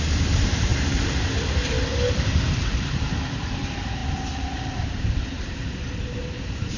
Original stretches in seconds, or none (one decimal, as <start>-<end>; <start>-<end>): 0.7-2.1